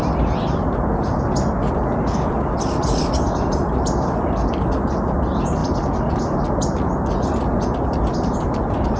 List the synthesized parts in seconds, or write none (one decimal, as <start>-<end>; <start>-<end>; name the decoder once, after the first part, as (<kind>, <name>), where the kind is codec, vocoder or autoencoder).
none